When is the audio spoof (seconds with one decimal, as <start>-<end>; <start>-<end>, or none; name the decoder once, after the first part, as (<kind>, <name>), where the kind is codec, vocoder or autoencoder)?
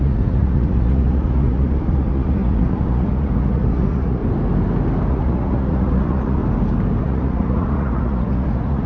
0.0-4.2 (vocoder, Vocos); 5.1-6.4; 7.0-8.9